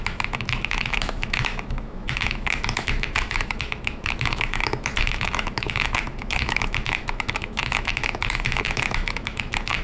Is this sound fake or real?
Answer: fake